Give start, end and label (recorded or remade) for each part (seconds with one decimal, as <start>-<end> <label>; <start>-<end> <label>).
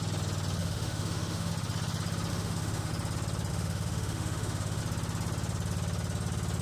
0.0-0.6 recorded; 0.6-1.5 remade; 1.5-2.3 recorded; 2.3-2.9 remade; 2.9-3.5 recorded; 3.5-4.8 remade; 4.8-6.6 recorded